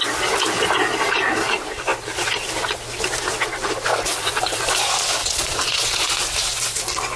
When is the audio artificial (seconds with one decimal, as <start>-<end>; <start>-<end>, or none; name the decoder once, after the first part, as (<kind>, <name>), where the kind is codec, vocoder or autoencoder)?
3.9-4.6 (vocoder, Vocos); 5.2-6.1